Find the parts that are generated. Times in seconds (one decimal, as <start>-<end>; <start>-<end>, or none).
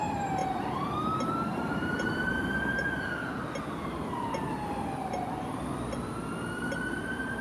0.4-2.9